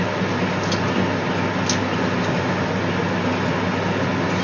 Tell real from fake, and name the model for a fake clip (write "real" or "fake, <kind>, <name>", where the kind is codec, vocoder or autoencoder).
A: real